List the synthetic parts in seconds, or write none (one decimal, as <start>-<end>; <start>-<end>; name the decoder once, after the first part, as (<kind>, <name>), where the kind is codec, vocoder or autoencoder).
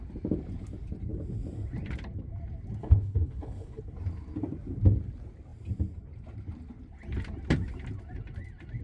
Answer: 2.8-3.8 (codec, HILCodec)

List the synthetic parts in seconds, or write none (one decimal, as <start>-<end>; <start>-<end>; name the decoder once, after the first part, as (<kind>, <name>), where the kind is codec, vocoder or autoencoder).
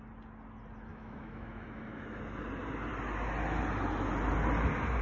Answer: 0.9-2.2 (autoencoder, DAC-VAE)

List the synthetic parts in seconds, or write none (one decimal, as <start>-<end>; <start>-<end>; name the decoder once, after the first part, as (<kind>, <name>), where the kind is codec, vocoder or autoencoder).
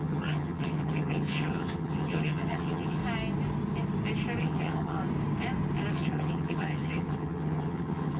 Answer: 0.0-3.0 (vocoder, HiFi-GAN); 4.4-5.0; 5.9-8.2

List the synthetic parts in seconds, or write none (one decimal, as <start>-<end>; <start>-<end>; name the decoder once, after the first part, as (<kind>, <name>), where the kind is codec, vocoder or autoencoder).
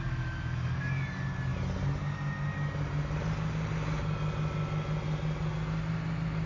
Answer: none